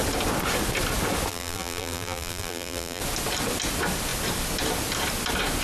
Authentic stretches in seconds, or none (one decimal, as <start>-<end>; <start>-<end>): 0.0-1.3; 3.0-5.6